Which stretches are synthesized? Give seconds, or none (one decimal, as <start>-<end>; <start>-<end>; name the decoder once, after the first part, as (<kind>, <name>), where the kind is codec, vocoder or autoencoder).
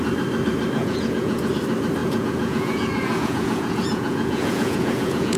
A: 0.8-1.5 (vocoder, Vocos); 2.0-5.4